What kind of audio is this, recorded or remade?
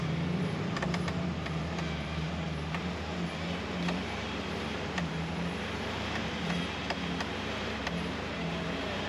remade